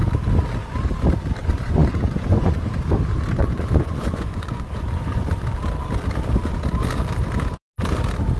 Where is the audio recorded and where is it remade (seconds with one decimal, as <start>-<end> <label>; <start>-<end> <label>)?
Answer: 0.0-1.4 recorded; 1.4-2.6 remade; 2.6-3.4 recorded; 3.4-5.2 remade; 5.2-8.4 recorded